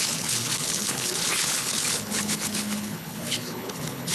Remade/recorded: remade